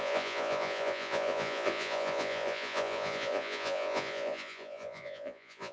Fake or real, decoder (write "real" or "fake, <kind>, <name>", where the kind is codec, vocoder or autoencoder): fake, vocoder, Vocos